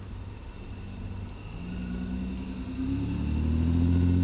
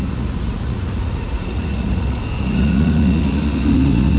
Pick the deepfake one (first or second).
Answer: second